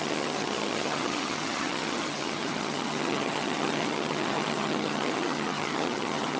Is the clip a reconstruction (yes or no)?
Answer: yes